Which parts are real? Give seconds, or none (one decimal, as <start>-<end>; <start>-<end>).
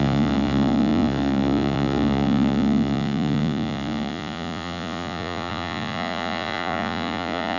none